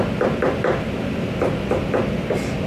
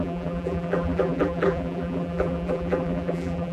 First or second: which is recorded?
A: first